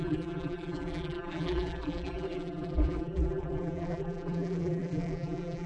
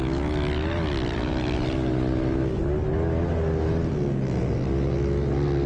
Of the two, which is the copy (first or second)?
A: first